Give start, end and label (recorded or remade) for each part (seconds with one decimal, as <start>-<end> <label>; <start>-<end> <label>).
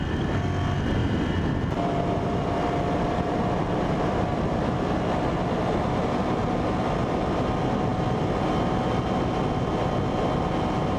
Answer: 0.0-1.0 recorded; 1.0-6.2 remade; 6.2-11.0 recorded